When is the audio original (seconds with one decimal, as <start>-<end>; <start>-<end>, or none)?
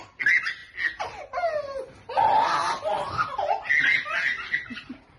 0.0-5.2